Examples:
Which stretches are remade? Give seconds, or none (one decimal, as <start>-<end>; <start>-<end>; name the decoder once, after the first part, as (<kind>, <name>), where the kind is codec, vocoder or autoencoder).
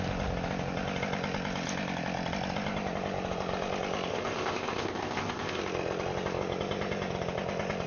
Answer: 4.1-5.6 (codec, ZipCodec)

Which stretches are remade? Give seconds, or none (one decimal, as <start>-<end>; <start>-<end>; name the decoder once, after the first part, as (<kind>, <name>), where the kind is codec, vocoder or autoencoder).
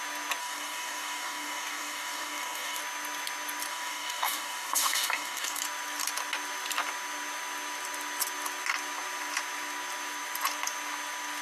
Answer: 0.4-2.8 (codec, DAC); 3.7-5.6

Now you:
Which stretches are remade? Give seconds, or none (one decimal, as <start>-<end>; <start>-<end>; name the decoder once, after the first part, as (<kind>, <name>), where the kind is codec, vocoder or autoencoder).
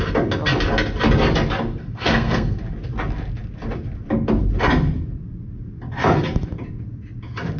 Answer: 1.8-2.6 (codec, SNAC)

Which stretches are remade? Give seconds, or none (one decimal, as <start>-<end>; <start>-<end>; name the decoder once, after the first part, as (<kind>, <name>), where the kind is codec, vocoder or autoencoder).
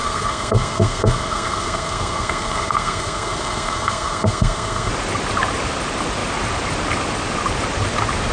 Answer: 0.0-4.9 (codec, SNAC)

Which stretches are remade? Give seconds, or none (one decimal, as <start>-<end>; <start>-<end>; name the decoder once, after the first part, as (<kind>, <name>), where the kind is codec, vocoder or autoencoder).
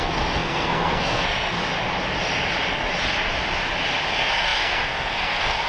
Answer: 0.0-1.6 (codec, SNAC); 4.1-5.7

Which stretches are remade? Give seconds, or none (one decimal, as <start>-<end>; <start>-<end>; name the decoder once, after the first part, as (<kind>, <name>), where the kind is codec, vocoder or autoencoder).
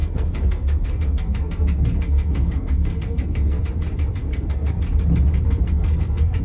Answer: 0.0-3.6 (codec, SNAC); 4.2-4.8; 5.3-6.4